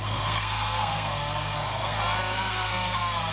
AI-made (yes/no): yes